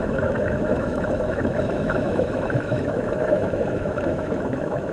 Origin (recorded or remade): remade